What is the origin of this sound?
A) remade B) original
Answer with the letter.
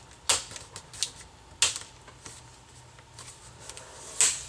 B